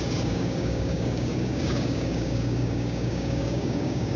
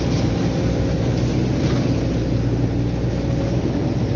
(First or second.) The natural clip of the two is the second